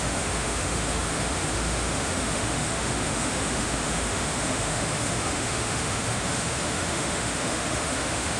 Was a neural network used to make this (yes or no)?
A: yes